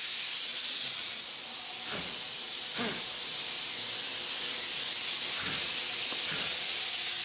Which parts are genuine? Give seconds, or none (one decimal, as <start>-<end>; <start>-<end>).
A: 0.0-0.5; 1.2-7.2